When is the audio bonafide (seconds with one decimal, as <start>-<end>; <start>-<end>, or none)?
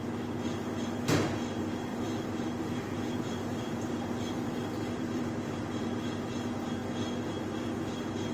0.0-1.9; 5.8-8.3